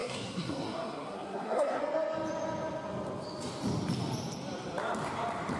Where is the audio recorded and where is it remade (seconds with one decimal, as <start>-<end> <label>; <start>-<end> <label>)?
0.0-1.8 remade; 1.8-5.6 recorded